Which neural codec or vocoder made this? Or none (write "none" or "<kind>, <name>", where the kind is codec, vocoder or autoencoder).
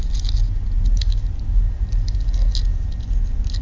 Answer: none